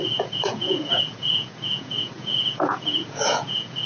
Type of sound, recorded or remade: remade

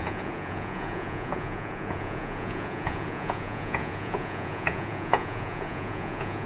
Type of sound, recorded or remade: remade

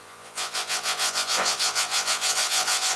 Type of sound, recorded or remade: remade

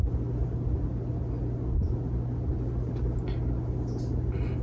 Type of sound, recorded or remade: recorded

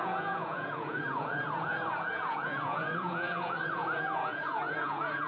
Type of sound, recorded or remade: remade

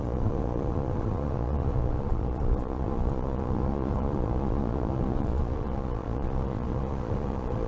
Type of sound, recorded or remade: remade